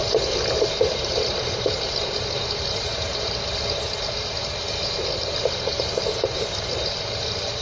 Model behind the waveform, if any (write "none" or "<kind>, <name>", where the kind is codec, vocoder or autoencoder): vocoder, BigVGAN v2